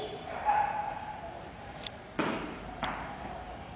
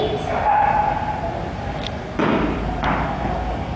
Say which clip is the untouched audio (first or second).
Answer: second